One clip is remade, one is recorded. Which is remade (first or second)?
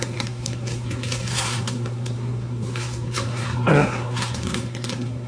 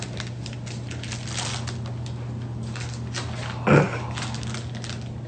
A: first